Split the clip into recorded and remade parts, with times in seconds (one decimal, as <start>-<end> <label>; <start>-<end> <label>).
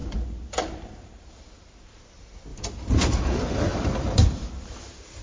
0.0-1.6 remade; 1.6-2.5 recorded; 2.5-3.4 remade; 3.4-4.2 recorded; 4.2-5.2 remade